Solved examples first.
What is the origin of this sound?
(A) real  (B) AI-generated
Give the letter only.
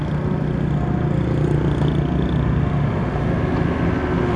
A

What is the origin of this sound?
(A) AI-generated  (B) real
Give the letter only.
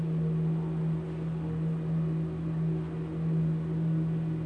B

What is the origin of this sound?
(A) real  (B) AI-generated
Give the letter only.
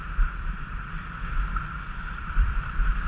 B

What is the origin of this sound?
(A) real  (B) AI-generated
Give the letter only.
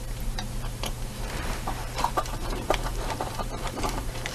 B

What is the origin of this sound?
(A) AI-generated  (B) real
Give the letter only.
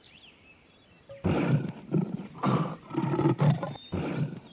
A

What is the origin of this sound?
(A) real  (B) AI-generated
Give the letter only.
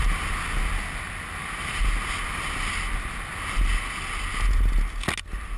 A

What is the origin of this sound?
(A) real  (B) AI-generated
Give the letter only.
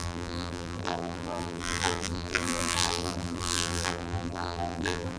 B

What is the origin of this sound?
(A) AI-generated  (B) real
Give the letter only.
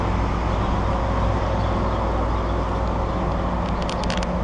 B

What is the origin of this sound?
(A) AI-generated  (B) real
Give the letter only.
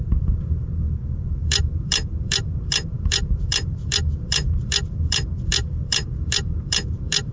A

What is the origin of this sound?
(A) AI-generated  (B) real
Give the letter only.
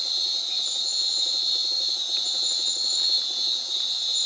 A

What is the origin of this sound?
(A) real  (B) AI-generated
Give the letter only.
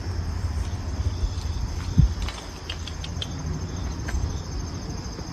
B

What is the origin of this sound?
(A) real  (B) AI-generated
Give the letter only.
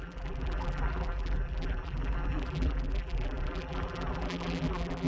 B